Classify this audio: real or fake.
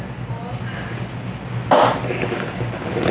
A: real